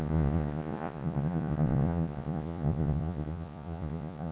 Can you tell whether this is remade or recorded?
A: remade